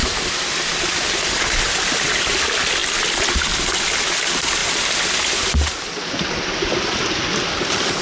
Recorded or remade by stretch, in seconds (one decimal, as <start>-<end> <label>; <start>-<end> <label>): 0.0-8.0 recorded